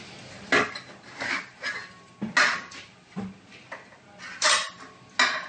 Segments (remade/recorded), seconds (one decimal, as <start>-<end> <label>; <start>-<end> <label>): 0.0-5.5 recorded